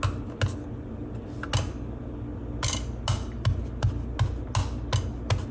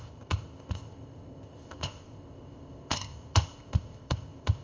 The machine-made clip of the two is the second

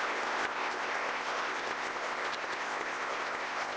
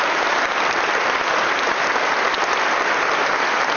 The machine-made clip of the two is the first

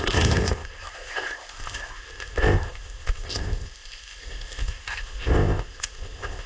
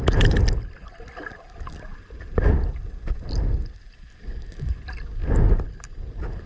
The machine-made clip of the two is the first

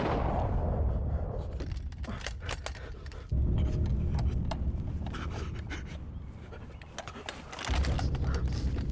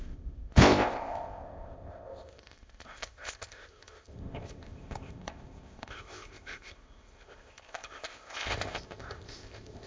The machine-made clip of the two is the second